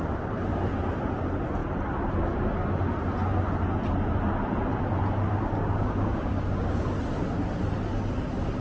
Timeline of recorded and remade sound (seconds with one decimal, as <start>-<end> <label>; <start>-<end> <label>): 0.0-5.3 recorded; 5.3-6.8 remade; 6.8-8.6 recorded